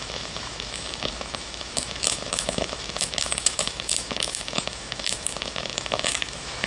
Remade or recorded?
remade